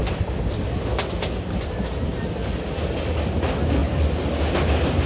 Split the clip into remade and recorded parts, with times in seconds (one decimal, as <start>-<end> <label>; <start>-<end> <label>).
0.0-5.1 recorded

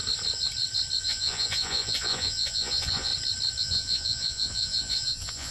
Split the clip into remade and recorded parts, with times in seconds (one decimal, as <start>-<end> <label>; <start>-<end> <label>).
0.0-1.0 recorded; 1.0-3.1 remade; 3.1-3.6 recorded; 3.6-5.5 remade

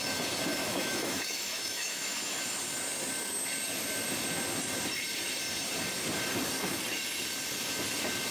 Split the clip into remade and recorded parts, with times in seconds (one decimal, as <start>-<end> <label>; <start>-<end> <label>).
0.0-0.6 recorded; 0.6-2.4 remade; 2.4-8.3 recorded